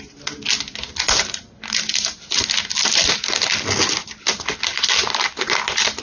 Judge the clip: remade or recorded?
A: recorded